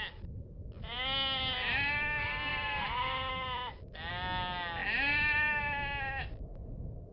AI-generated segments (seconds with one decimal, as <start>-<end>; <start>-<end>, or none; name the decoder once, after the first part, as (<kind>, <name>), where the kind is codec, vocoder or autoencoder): none